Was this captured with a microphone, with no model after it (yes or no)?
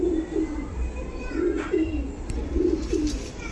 yes